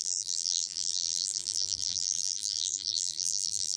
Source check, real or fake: fake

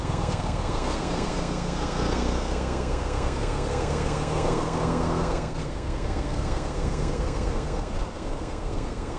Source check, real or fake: fake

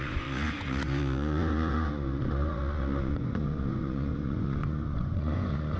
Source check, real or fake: fake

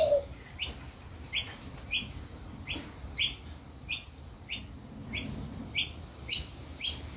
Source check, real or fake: real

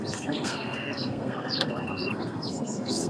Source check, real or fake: fake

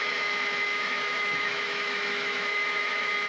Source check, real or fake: fake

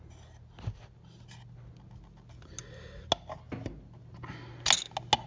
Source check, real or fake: real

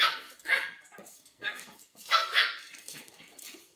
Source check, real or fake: fake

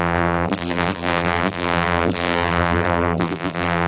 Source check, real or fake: fake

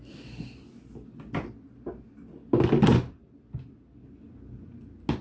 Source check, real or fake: real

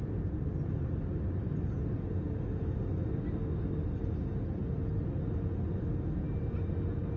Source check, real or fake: real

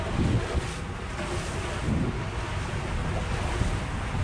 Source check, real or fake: real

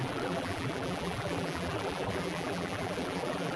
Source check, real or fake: fake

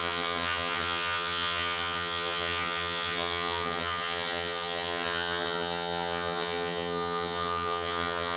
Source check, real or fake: fake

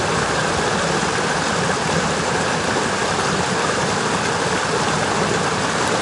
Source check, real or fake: real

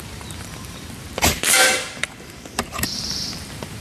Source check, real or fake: fake